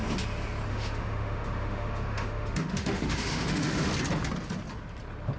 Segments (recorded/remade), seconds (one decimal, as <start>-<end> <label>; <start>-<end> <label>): 0.0-0.7 recorded; 0.7-3.9 remade; 3.9-5.4 recorded